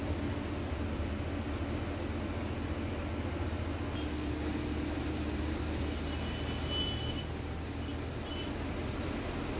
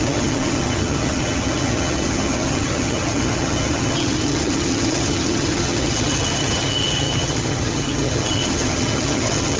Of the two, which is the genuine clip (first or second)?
first